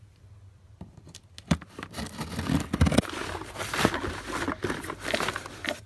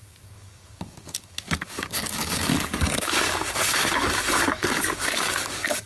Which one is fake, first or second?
second